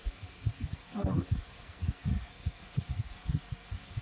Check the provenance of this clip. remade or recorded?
remade